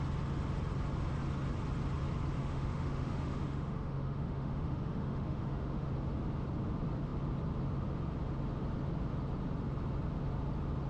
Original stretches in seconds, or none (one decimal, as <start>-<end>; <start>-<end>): 0.0-2.4; 5.9-10.9